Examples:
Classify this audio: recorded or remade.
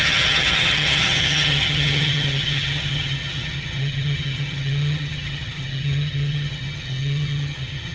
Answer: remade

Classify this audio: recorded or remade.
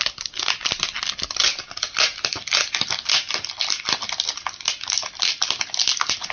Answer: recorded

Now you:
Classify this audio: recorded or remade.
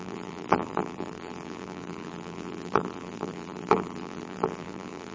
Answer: remade